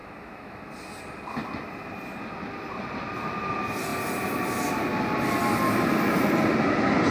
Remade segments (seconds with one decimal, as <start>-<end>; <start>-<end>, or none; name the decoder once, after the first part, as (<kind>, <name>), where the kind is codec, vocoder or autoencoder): 0.0-0.7 (autoencoder, DAC-VAE)